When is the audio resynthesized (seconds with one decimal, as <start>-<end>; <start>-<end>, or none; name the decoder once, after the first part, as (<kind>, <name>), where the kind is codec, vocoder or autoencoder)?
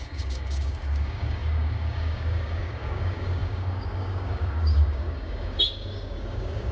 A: 0.0-6.7 (codec, DAC)